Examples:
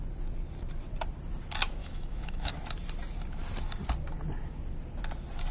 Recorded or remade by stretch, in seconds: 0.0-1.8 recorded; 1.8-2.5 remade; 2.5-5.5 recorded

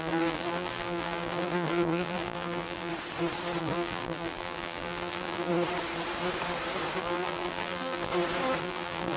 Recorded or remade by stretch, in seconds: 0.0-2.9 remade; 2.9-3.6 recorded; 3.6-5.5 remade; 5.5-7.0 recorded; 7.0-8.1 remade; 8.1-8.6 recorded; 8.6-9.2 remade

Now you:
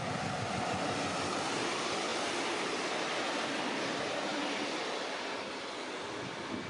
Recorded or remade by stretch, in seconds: 0.0-6.7 recorded

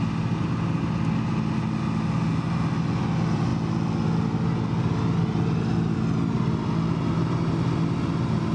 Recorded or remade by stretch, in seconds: 0.0-8.5 recorded

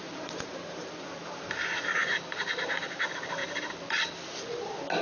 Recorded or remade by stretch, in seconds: 0.0-3.4 remade; 3.4-5.0 recorded

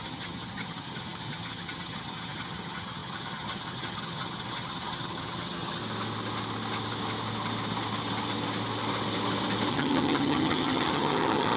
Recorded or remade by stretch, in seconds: 0.0-5.8 remade; 5.8-9.7 recorded; 9.7-11.6 remade

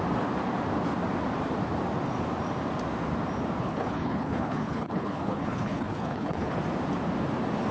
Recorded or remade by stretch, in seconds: 0.0-3.6 recorded; 3.6-6.6 remade; 6.6-7.7 recorded

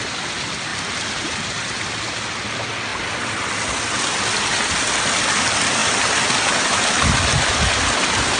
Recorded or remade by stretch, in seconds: 0.0-0.7 recorded; 0.7-1.4 remade; 1.4-8.4 recorded